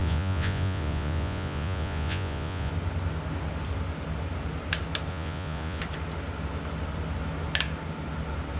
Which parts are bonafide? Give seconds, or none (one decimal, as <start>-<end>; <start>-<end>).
2.7-5.1; 5.8-8.6